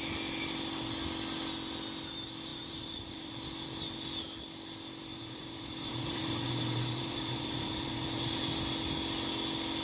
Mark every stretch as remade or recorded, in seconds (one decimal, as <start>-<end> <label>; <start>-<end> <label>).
0.0-2.5 recorded; 2.5-3.3 remade; 3.3-5.1 recorded; 5.1-8.4 remade; 8.4-9.8 recorded